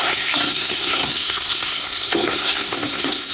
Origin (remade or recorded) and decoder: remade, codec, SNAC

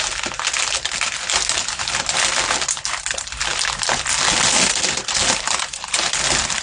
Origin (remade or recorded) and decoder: recorded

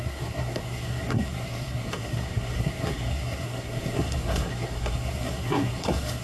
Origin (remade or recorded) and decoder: remade, codec, SNAC